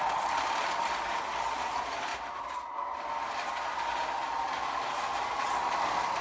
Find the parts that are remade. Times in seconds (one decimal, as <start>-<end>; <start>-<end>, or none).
none